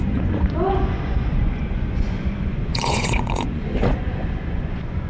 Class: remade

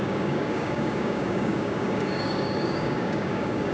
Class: remade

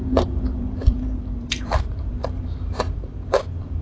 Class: remade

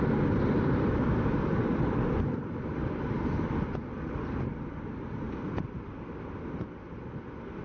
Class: remade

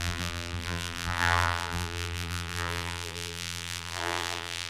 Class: remade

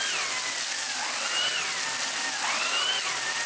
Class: recorded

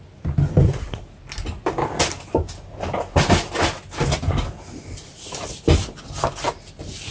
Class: recorded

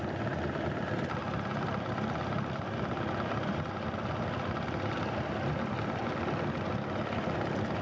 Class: recorded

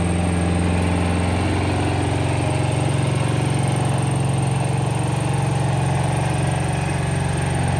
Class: recorded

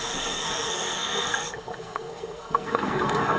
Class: remade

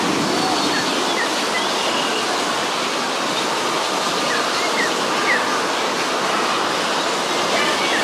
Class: recorded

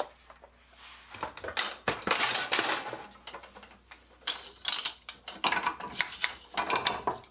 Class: recorded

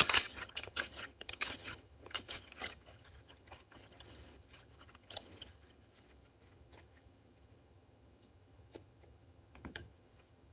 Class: remade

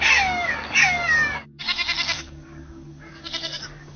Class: remade